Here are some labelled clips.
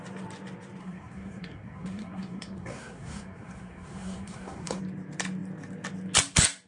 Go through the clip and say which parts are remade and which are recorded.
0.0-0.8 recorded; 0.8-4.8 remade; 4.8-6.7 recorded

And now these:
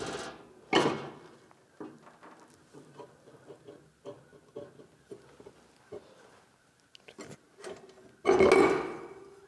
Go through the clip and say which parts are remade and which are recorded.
0.0-9.5 recorded

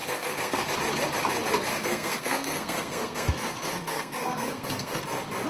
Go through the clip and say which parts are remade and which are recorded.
0.0-0.7 remade; 0.7-1.7 recorded; 1.7-5.0 remade; 5.0-5.5 recorded

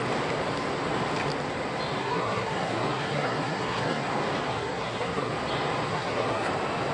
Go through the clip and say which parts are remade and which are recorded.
0.0-2.0 recorded; 2.0-4.1 remade; 4.1-4.5 recorded; 4.5-5.3 remade; 5.3-5.9 recorded; 5.9-6.5 remade; 6.5-6.9 recorded

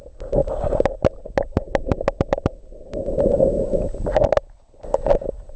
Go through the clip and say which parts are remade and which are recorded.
0.0-5.6 recorded

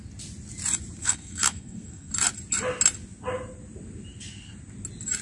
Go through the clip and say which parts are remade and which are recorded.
0.0-1.0 recorded; 1.0-2.1 remade; 2.1-5.2 recorded

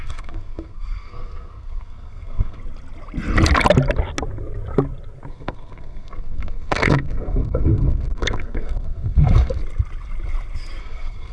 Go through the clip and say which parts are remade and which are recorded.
0.0-2.6 remade; 2.6-5.3 recorded; 5.3-9.6 remade; 9.6-10.8 recorded; 10.8-11.3 remade

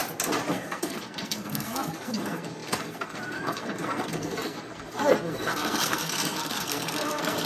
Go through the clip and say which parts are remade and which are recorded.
0.0-0.5 recorded; 0.5-7.5 remade